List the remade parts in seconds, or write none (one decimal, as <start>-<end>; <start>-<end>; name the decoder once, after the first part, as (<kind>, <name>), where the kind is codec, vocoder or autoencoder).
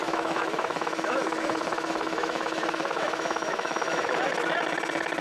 0.0-4.3 (autoencoder, DAC-VAE)